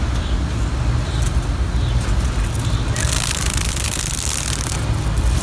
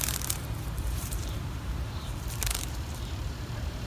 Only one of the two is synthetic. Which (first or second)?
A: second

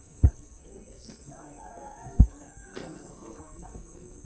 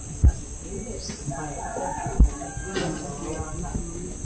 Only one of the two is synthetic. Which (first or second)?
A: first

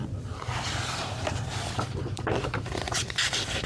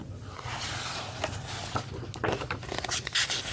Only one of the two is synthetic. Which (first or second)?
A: first